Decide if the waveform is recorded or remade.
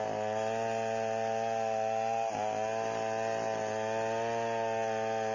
recorded